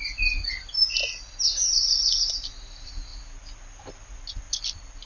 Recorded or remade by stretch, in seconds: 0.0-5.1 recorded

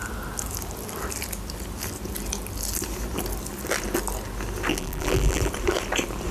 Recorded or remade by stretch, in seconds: 0.0-4.7 recorded; 4.7-5.5 remade; 5.5-6.3 recorded

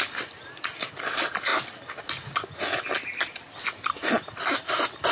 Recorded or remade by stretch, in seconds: 0.0-5.1 recorded

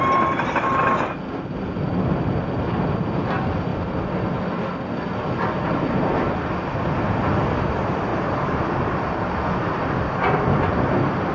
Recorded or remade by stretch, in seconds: 0.0-8.1 recorded; 8.1-8.6 remade; 8.6-11.3 recorded

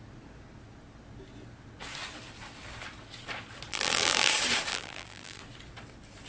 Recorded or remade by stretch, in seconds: 0.0-3.7 recorded; 3.7-4.3 remade; 4.3-4.7 recorded; 4.7-5.4 remade; 5.4-6.3 recorded

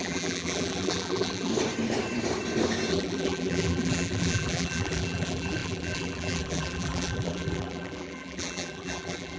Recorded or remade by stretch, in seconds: 0.0-1.5 remade; 1.5-2.9 recorded; 2.9-9.4 remade